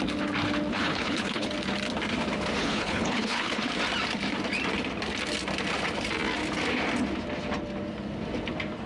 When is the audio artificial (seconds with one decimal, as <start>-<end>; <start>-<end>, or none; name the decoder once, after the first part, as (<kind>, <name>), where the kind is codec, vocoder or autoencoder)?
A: 0.7-1.5 (codec, HILCodec); 2.6-3.7